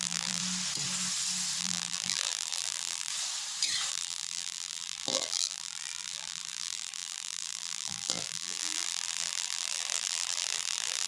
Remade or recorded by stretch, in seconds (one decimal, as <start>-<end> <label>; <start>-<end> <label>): 0.0-0.4 remade; 0.4-1.6 recorded; 1.6-3.1 remade; 3.1-3.9 recorded; 3.9-11.1 remade